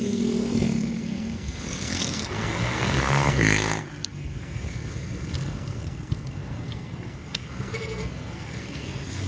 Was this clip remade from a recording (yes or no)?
yes